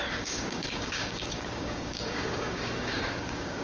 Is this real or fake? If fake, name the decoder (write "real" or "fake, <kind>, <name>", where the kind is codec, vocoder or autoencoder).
fake, codec, DAC